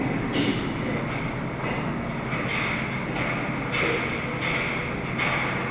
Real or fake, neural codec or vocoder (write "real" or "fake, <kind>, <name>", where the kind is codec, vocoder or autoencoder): real